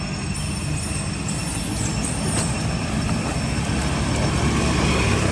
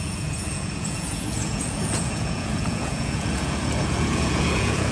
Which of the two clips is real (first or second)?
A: first